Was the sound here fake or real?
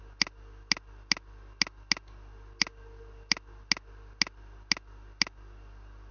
real